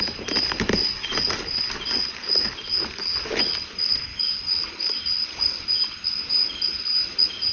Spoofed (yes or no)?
no